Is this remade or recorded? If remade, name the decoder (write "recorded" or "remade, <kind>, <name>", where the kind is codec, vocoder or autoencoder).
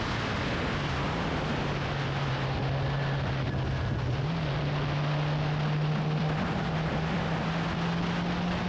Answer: recorded